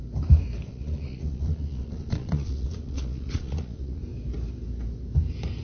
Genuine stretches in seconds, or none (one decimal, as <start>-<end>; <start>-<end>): 0.0-0.7; 4.0-5.6